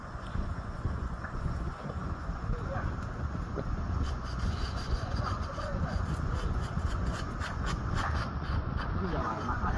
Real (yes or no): no